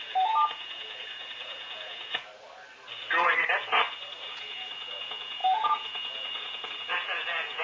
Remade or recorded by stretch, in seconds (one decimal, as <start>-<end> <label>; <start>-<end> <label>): 0.0-2.3 remade; 2.3-4.3 recorded; 4.3-7.6 remade

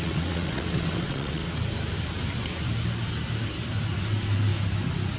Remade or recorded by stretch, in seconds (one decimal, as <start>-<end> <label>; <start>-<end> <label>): 0.0-1.4 remade; 1.4-4.0 recorded; 4.0-4.5 remade; 4.5-5.2 recorded

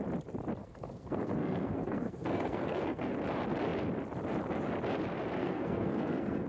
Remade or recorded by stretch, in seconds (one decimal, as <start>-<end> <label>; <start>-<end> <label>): 0.0-0.6 recorded; 0.6-3.1 remade; 3.1-5.4 recorded; 5.4-6.5 remade